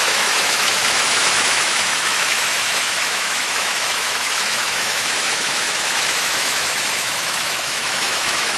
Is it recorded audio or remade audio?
remade